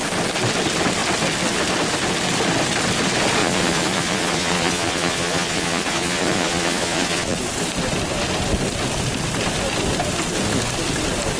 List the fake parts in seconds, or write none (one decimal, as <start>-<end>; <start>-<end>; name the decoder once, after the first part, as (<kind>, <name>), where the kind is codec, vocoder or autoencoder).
3.4-7.4 (vocoder, Vocos)